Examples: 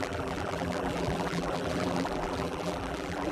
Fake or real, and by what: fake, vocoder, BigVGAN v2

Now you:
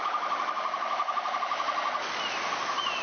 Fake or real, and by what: real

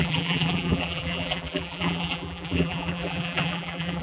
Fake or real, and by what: fake, vocoder, BigVGAN v2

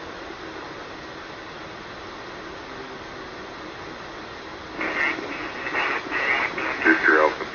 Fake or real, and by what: real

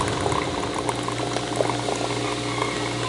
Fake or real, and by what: real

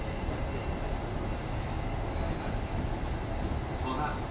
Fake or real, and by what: real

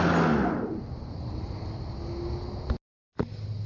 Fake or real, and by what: real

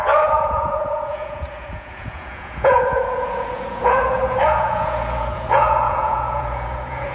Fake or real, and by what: fake, vocoder, Vocos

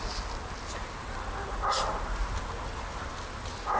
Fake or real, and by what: real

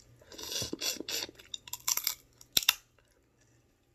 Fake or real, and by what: real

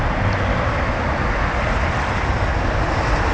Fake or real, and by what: real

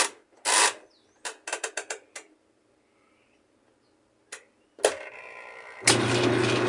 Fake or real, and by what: real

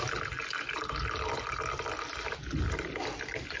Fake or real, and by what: real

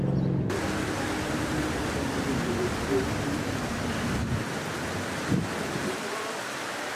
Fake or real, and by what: real